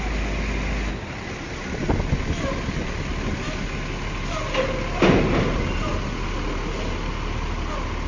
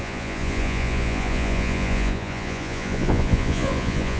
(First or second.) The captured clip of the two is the first